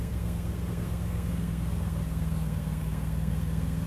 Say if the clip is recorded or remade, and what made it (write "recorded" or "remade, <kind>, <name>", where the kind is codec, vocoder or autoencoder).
remade, codec, SNAC